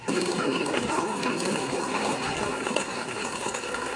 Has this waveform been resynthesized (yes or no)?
yes